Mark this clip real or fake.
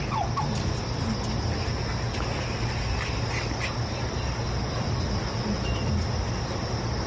real